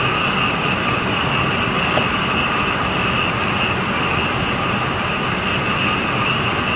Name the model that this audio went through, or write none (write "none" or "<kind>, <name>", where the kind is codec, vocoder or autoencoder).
none